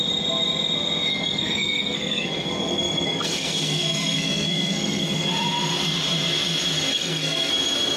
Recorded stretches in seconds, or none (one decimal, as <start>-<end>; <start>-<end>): 0.0-1.1; 5.3-6.9; 7.5-8.0